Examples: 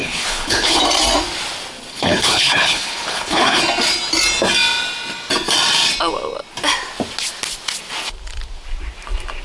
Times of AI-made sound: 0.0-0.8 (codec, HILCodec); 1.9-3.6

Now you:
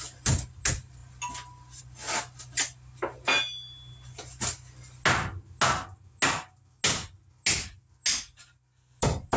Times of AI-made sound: none

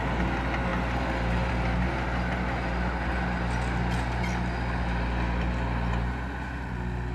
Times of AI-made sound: none

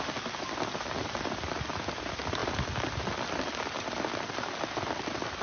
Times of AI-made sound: none

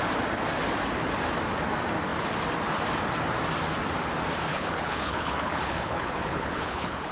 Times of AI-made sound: 4.5-7.1 (codec, HILCodec)